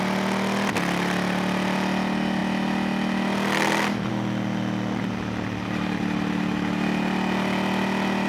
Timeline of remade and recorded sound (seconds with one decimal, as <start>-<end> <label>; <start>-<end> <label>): 0.0-8.3 recorded